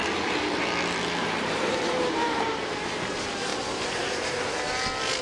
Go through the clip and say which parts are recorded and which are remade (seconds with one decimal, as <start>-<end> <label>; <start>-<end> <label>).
0.0-1.2 recorded; 1.2-2.5 remade; 2.5-3.5 recorded; 3.5-4.5 remade; 4.5-5.2 recorded